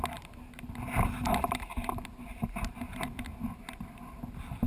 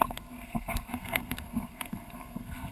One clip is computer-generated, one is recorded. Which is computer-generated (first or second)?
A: second